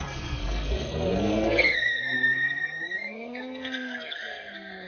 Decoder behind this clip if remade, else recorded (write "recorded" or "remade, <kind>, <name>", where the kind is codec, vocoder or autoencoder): remade, codec, SNAC